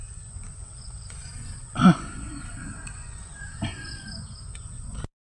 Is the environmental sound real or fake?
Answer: fake